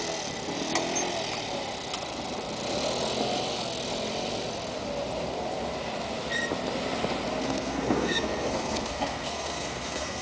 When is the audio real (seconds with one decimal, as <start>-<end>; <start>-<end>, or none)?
0.0-7.4

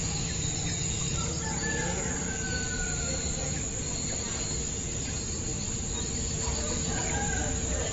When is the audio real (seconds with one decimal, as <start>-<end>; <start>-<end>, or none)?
0.0-5.5

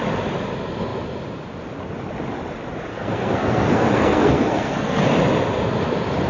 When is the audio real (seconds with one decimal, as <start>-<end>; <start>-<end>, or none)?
0.0-2.9; 5.0-6.3

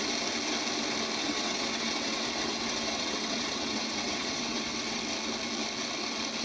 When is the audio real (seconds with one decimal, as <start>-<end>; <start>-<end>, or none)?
0.0-1.2; 5.0-6.4

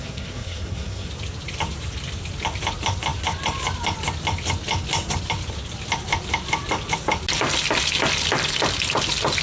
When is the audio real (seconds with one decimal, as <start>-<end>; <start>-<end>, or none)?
1.1-9.4

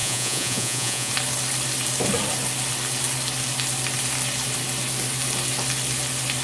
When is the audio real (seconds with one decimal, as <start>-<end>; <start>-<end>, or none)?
1.1-6.4

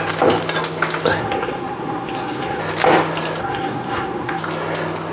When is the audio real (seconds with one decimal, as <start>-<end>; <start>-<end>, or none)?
0.0-1.2; 2.6-3.4; 4.4-5.1

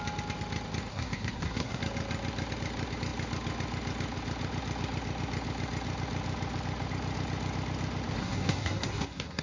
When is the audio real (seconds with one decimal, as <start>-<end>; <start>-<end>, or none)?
0.0-0.9; 1.8-8.2